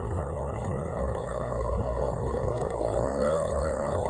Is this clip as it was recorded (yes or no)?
no